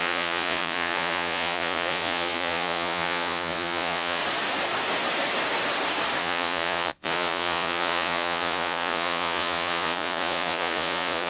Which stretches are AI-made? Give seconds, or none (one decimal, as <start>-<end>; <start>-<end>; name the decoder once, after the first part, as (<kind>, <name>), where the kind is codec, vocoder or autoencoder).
0.0-4.2 (vocoder, Vocos); 6.2-11.3

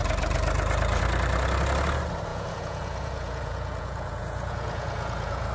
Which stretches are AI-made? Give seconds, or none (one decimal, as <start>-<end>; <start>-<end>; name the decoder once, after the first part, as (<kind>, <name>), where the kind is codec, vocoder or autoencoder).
2.3-5.5 (vocoder, Vocos)